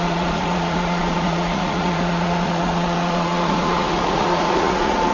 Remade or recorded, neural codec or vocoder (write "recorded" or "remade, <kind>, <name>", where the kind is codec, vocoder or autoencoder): remade, vocoder, Vocos